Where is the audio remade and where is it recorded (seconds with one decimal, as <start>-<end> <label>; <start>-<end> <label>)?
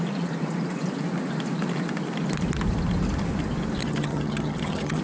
0.0-3.8 recorded; 3.8-5.0 remade